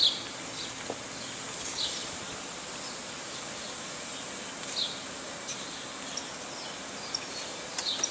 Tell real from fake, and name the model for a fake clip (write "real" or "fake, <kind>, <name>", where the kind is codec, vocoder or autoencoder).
real